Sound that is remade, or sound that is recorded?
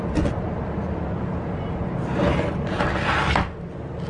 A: recorded